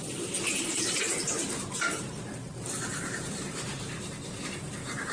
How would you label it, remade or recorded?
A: remade